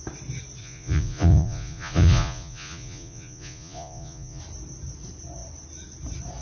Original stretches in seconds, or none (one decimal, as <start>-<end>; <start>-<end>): 0.0-0.6; 4.4-6.4